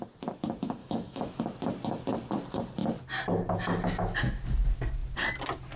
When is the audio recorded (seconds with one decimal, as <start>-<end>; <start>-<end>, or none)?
0.0-0.8; 1.4-5.8

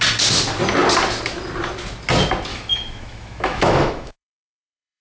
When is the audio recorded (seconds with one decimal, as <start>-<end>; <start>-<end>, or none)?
0.0-2.5

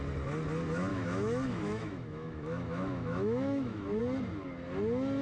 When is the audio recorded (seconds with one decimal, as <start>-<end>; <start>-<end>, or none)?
0.0-0.9; 4.0-5.2

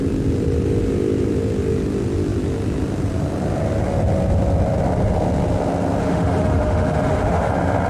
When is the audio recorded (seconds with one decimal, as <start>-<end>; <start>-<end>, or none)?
0.0-6.0; 7.5-7.9

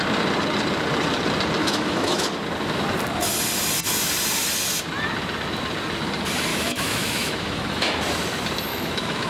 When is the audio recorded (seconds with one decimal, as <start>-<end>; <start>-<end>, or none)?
0.0-1.6; 2.2-6.5; 8.0-8.7

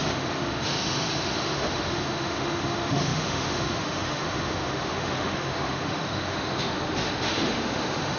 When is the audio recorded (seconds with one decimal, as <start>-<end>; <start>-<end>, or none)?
none